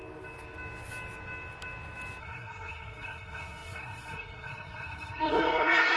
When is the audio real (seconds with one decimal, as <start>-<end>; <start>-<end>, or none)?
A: 0.0-2.2